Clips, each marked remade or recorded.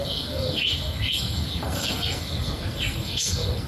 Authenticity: remade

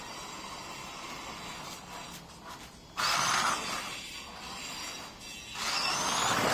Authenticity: recorded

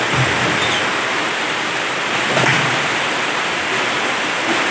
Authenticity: recorded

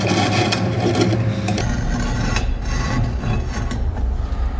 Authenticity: recorded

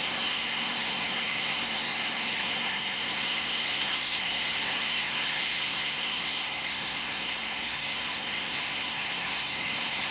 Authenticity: remade